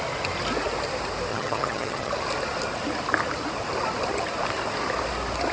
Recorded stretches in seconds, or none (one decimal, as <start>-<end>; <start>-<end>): 0.0-1.3; 2.1-5.5